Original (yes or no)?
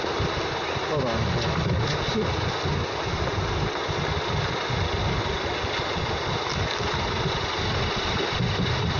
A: yes